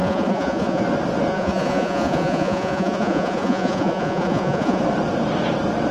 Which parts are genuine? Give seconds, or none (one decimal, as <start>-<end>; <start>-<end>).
0.8-1.3; 4.8-5.9